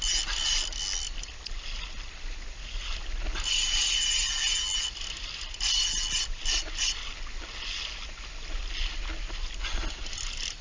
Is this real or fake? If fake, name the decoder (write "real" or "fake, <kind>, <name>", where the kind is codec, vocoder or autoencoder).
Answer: real